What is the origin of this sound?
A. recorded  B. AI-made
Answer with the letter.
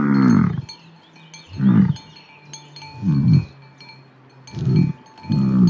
A